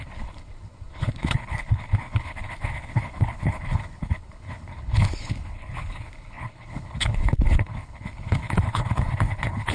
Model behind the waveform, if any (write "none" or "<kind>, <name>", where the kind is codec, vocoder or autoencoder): codec, HILCodec